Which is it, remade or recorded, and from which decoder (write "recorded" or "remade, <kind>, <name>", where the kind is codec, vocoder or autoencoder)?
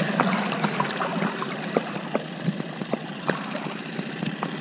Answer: recorded